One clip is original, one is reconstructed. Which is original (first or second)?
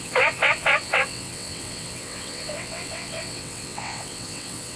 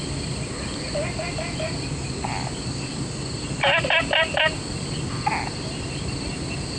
second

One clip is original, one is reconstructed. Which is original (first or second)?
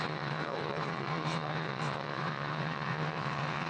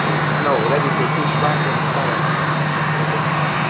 second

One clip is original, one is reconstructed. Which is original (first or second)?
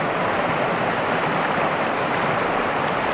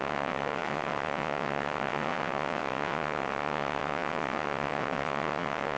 first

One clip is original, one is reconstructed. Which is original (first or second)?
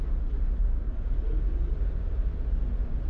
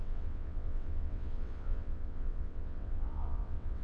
first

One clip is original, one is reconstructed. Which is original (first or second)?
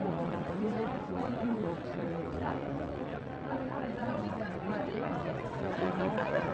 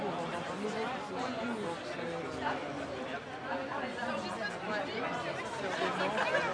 second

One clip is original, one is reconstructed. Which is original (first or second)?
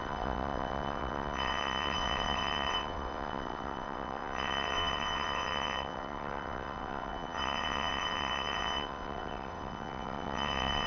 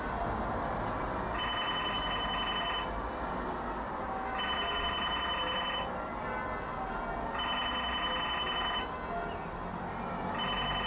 second